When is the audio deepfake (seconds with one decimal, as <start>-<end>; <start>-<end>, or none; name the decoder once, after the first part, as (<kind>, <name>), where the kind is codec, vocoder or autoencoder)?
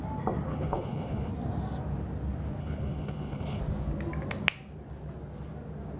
0.5-1.3 (codec, HILCodec); 2.6-3.6